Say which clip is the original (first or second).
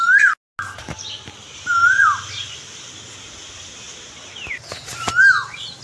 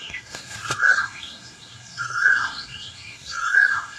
first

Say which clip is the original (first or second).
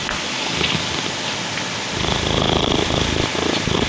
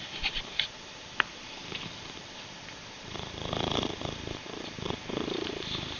first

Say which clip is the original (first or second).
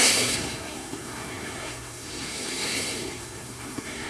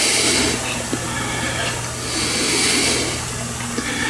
second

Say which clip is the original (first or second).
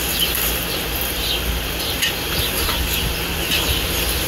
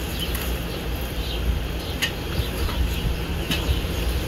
first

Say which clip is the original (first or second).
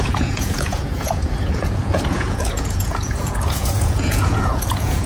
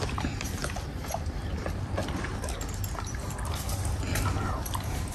second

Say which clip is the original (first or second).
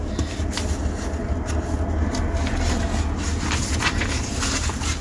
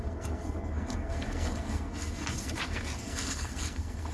first